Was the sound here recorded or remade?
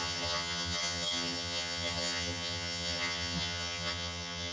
remade